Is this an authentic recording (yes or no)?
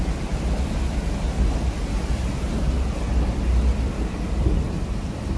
yes